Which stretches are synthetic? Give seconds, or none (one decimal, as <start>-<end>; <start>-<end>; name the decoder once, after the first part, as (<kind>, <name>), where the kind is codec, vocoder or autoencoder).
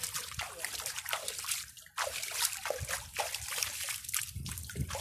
none